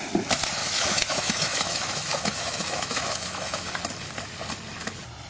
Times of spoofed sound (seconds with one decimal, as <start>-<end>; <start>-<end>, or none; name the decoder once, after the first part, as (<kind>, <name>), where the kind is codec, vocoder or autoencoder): 0.6-3.8 (autoencoder, DAC-VAE)